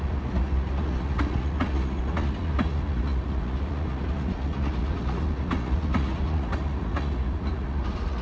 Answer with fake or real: fake